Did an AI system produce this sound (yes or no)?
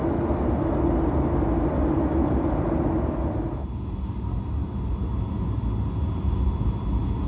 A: no